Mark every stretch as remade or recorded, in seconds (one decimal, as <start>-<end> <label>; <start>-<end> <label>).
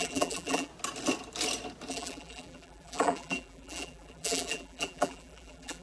0.0-0.7 remade; 0.7-1.9 recorded; 1.9-5.8 remade